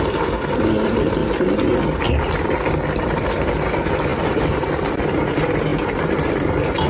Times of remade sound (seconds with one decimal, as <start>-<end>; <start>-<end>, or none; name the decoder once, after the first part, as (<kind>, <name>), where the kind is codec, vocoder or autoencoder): 0.0-1.2 (vocoder, BigVGAN v2); 3.0-6.9